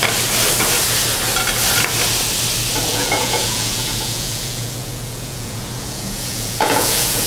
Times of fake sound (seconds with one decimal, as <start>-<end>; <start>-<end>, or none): 2.9-7.3